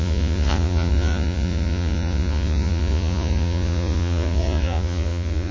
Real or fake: fake